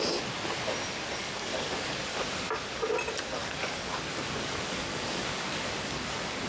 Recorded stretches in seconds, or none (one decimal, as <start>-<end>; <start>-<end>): 0.0-1.2; 2.2-3.4